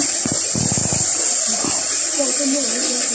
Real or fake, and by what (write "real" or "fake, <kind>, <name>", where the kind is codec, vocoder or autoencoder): real